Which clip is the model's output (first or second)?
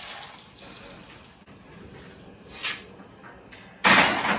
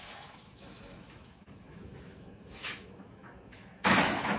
second